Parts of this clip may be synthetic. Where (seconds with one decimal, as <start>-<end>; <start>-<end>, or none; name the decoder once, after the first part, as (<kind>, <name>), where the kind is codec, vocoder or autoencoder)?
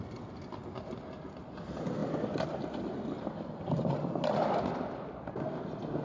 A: none